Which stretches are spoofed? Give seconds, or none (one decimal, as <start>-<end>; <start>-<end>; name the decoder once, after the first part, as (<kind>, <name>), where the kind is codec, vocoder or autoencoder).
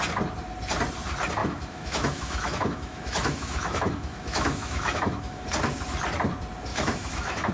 1.4-5.5 (autoencoder, DAC-VAE); 6.7-7.5